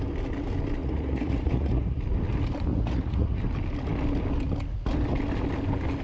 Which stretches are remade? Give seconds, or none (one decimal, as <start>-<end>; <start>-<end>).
0.8-2.0; 2.7-3.4